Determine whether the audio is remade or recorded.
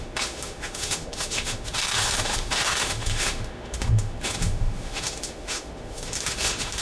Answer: remade